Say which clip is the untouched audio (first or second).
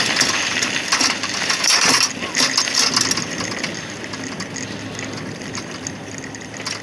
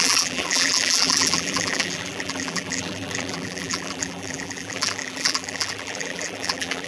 first